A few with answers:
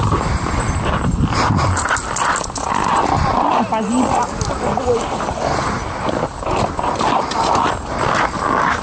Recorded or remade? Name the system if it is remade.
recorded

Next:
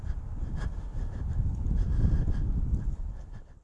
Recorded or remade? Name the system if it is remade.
recorded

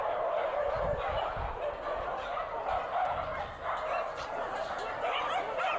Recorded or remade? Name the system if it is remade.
recorded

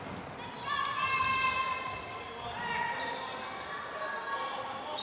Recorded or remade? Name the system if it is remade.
recorded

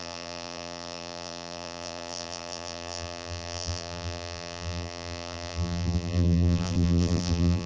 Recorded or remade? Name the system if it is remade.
remade, vocoder, BigVGAN v2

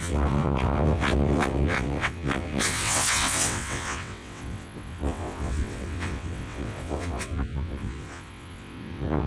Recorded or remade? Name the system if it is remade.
remade, vocoder, WaveNeXt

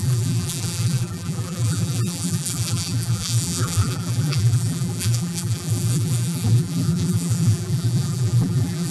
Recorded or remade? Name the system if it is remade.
remade, vocoder, BigVGAN v2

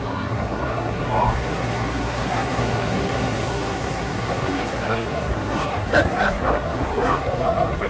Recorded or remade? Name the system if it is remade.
remade, codec, SNAC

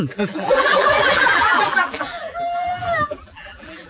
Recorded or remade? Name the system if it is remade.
remade, vocoder, BigVGAN v2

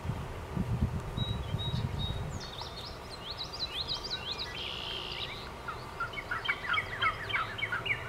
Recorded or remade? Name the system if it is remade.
recorded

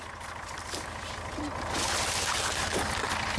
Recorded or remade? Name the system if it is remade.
recorded